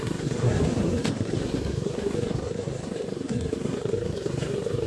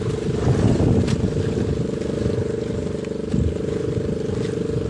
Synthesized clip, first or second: first